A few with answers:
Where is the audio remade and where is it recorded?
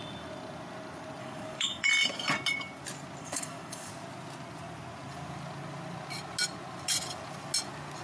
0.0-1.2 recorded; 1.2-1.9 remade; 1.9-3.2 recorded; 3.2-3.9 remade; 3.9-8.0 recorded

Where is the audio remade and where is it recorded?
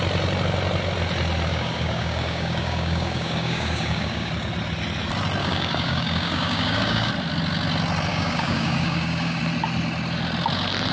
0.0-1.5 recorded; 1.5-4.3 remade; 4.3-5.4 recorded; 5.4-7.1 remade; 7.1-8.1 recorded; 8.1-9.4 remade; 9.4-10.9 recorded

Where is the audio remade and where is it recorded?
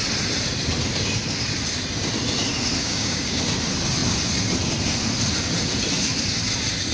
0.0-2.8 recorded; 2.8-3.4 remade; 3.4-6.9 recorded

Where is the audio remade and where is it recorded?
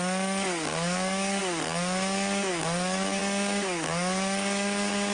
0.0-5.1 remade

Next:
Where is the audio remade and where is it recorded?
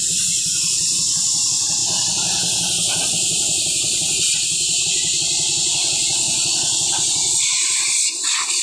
0.0-8.6 recorded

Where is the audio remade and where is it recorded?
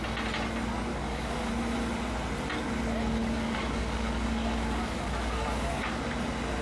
0.0-0.9 recorded; 0.9-1.5 remade; 1.5-3.2 recorded; 3.2-6.0 remade; 6.0-6.6 recorded